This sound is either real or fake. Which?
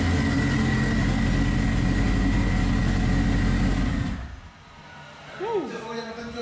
real